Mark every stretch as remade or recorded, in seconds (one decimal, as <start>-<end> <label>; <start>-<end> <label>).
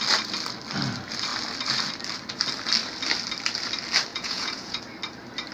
0.0-4.1 recorded; 4.1-4.8 remade; 4.8-5.5 recorded